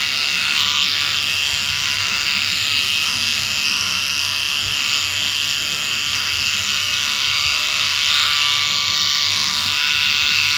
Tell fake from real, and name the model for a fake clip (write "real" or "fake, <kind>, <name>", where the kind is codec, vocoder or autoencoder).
fake, codec, SNAC